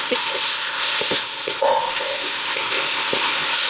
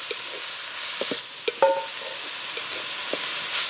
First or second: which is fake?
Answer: first